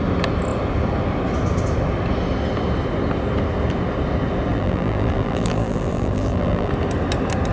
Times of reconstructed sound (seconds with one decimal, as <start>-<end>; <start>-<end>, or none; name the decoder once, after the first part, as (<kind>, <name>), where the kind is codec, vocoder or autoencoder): 4.5-6.7 (vocoder, BigVGAN v2)